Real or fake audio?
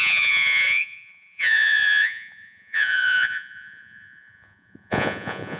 fake